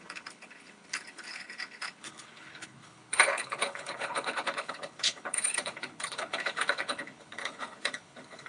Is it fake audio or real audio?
fake